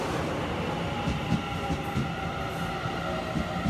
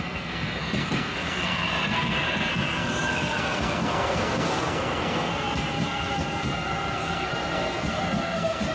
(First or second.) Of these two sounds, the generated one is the second